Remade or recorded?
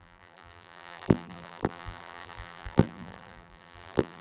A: remade